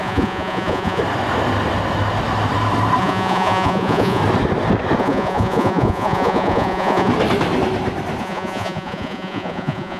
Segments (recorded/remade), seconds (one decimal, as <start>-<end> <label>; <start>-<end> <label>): 0.0-1.0 remade; 1.0-3.0 recorded; 3.0-4.2 remade; 4.2-5.0 recorded; 5.0-7.1 remade; 7.1-8.2 recorded; 8.2-10.0 remade